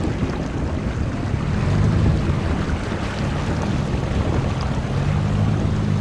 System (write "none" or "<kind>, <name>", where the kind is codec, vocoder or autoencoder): none